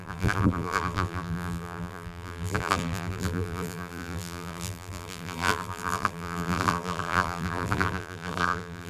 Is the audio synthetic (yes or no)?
yes